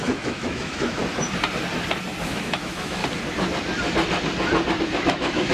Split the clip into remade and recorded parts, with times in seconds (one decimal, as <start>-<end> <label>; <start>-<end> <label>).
0.0-1.0 remade; 1.0-2.2 recorded; 2.2-3.0 remade; 3.0-4.8 recorded; 4.8-5.5 remade